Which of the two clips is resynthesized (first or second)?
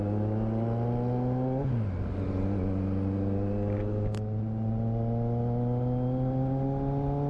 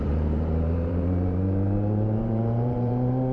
second